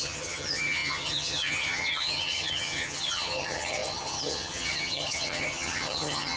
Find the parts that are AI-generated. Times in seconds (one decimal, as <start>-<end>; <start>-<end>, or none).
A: 0.0-6.4